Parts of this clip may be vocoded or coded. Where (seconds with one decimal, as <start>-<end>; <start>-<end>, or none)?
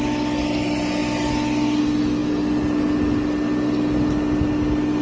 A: none